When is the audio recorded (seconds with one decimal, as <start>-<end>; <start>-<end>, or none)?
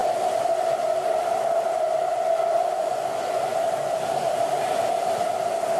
0.0-2.1; 4.0-5.8